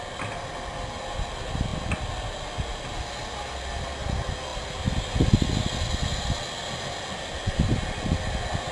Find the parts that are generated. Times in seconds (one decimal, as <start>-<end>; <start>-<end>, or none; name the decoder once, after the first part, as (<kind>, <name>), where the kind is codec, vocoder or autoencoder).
none